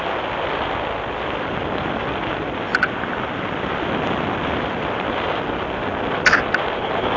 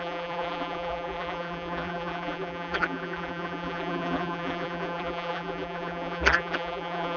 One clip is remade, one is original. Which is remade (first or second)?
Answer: second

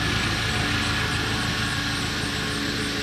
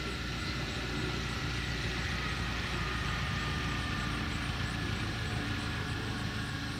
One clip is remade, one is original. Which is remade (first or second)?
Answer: second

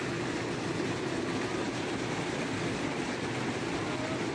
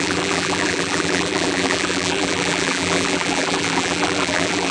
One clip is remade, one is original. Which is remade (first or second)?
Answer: second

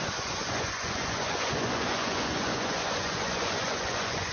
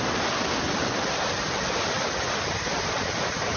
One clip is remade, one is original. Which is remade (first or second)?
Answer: first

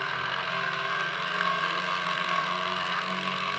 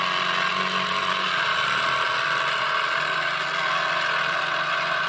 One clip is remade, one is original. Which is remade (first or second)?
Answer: first